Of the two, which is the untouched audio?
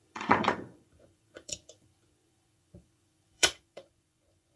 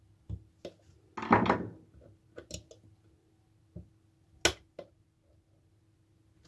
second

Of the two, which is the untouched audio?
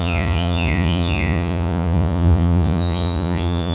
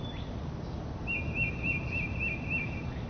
second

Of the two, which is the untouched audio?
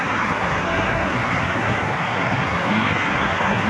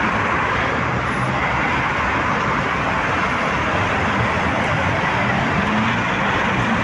second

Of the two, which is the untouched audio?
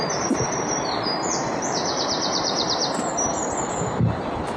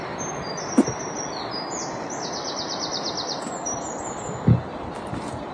second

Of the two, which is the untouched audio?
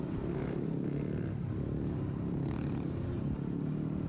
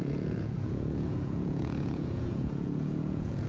first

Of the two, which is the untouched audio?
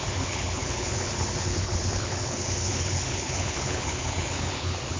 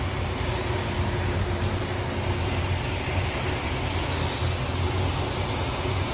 second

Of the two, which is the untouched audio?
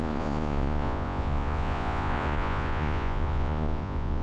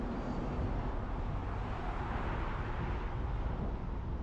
second